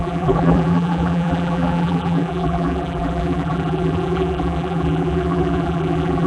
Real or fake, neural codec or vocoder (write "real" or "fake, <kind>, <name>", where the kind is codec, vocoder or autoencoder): fake, vocoder, BigVGAN v2